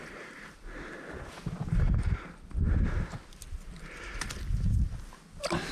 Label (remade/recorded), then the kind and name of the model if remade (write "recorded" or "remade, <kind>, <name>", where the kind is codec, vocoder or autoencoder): recorded